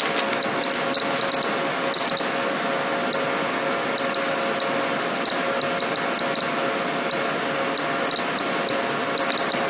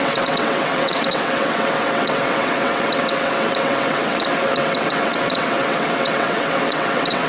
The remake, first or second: second